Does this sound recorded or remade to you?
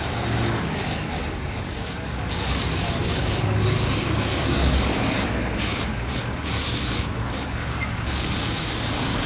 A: remade